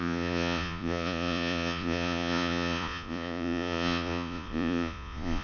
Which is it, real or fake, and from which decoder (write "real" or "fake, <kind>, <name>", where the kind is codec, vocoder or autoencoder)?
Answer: fake, vocoder, Vocos